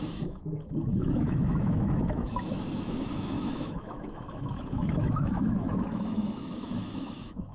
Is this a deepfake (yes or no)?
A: yes